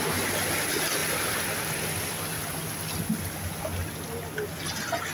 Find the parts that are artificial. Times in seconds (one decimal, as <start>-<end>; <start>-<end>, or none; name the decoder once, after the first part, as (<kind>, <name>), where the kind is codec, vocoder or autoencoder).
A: none